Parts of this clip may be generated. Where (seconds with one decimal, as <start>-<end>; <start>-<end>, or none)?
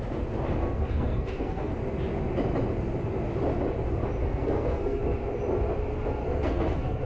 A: 0.6-1.7; 4.2-5.0; 6.2-7.0